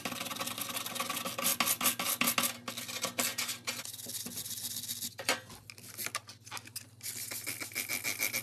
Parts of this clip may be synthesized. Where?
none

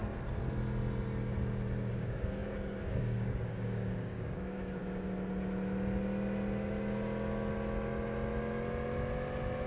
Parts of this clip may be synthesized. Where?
1.9-4.8 (codec, DAC)

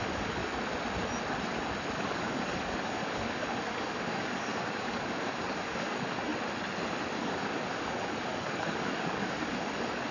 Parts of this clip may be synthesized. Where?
0.0-0.4 (codec, DAC); 1.9-6.3; 7.2-10.1

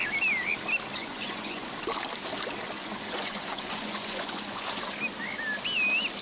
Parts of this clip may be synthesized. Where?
1.0-1.7 (vocoder, Vocos); 2.8-4.8

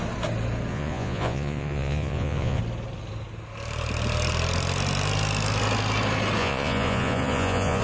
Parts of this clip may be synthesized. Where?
0.7-2.6 (vocoder, Vocos); 6.4-7.8

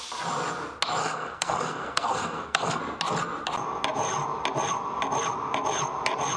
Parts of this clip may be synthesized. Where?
1.0-2.8 (codec, SNAC)

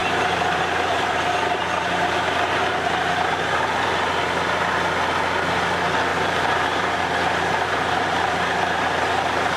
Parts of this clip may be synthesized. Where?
0.0-4.1 (vocoder, BigVGAN v2); 6.1-9.6